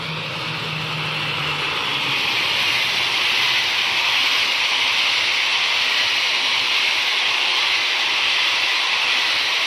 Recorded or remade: recorded